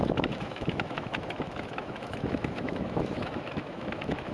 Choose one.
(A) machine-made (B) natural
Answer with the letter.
A